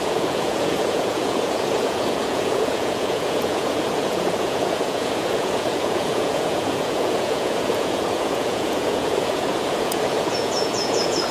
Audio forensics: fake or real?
fake